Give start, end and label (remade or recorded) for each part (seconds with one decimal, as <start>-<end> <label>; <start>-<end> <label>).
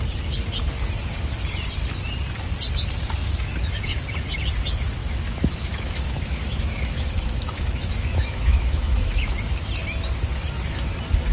0.0-3.2 recorded; 3.2-3.8 remade; 3.8-5.0 recorded; 5.0-9.4 remade; 9.4-11.3 recorded